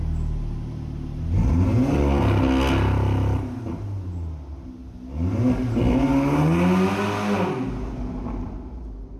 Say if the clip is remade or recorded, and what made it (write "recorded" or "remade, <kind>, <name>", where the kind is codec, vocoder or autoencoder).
recorded